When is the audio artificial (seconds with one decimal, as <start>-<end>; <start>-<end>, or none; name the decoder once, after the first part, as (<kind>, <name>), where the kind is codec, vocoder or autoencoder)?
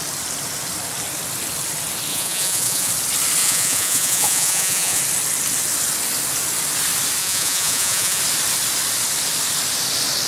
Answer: 2.1-2.9 (vocoder, Vocos); 3.4-5.0; 7.2-8.2